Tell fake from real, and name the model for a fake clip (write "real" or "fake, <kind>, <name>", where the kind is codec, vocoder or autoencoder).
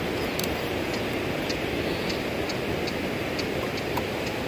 real